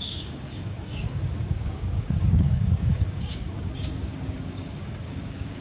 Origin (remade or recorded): remade